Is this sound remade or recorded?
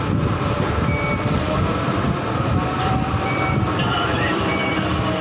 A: remade